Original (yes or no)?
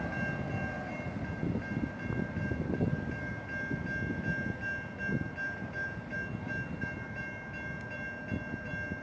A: yes